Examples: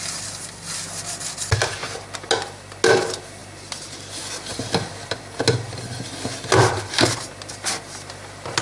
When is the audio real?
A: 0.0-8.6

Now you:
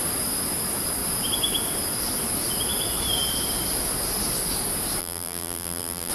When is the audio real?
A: 0.0-5.0

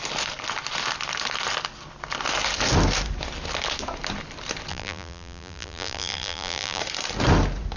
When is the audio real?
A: 0.0-4.7; 6.8-7.8